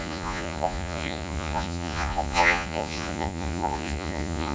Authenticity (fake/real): fake